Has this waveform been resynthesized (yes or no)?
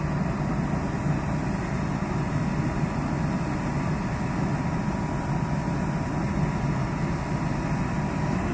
no